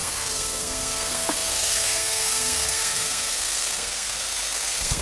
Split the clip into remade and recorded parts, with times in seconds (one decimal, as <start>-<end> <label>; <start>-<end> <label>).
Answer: 0.0-5.0 remade